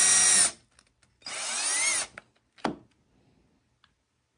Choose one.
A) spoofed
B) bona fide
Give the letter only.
B